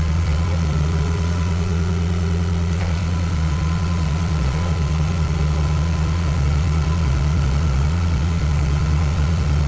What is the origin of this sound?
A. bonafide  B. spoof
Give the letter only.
B